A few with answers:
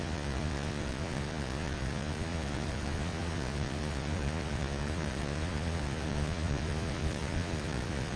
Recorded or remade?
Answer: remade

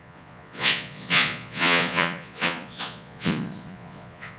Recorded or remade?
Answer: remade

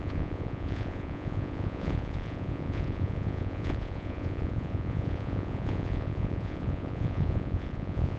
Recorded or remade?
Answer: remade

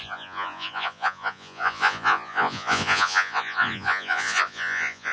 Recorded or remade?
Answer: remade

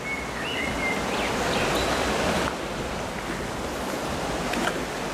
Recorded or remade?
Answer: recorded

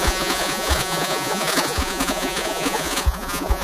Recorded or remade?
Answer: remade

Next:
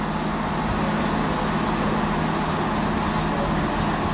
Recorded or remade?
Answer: recorded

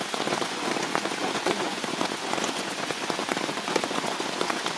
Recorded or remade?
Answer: remade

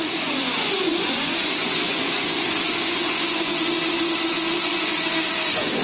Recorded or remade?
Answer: remade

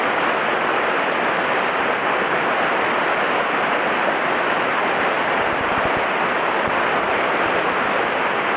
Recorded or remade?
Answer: recorded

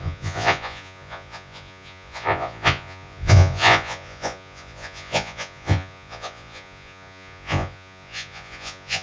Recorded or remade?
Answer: remade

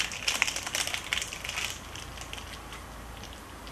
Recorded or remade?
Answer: recorded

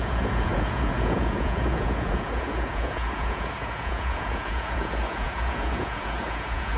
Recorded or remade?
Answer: remade